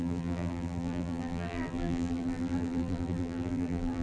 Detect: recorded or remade remade